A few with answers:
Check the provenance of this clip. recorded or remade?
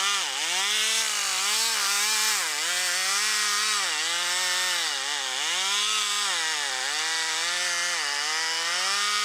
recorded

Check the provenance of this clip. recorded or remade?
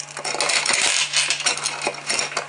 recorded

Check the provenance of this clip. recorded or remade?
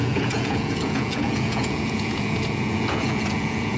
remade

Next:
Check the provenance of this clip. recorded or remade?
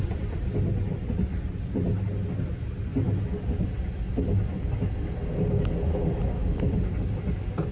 recorded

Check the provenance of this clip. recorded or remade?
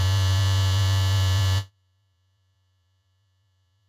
remade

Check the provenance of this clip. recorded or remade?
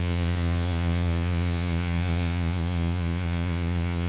remade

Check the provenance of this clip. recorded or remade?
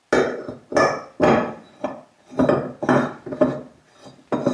recorded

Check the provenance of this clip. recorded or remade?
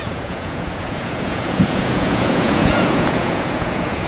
remade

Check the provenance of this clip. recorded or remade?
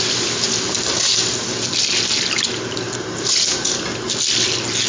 recorded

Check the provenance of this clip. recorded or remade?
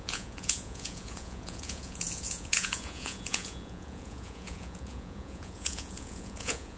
remade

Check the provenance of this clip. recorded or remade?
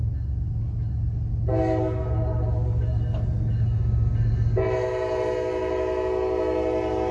recorded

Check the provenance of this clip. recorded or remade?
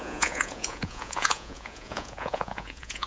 remade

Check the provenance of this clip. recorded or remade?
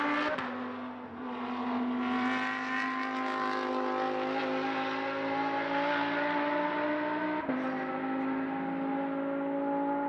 recorded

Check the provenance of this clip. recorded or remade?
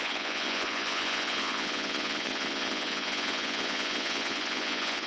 remade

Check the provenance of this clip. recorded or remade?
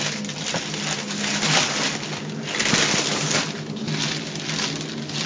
recorded